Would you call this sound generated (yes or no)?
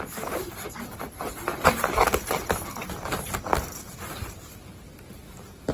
no